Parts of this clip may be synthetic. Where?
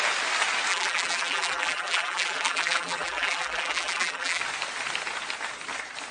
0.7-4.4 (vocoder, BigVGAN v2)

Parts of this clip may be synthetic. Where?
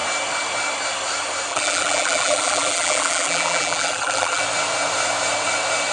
1.5-4.4 (vocoder, BigVGAN v2)